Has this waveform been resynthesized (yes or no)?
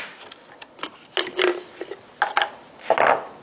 no